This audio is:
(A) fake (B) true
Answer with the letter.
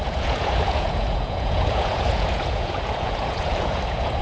A